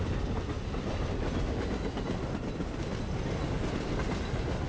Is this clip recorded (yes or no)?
yes